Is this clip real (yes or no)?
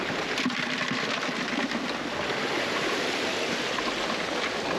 yes